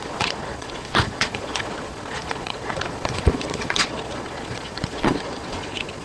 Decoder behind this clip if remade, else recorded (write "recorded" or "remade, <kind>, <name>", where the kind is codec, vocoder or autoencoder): remade, vocoder, Vocos